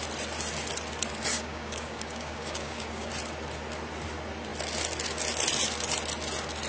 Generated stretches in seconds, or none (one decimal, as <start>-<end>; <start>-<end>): 1.3-3.1